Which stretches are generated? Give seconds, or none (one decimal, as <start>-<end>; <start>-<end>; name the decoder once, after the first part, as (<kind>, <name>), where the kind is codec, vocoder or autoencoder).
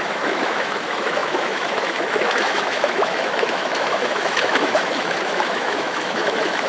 0.0-6.7 (autoencoder, DAC-VAE)